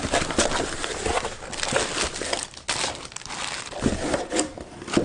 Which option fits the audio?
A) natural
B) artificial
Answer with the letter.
A